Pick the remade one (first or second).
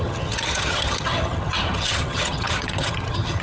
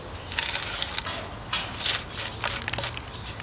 first